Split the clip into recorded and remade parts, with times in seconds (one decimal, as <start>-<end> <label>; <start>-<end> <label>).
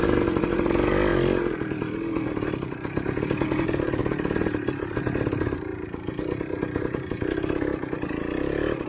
0.0-4.0 remade; 4.0-5.0 recorded; 5.0-8.9 remade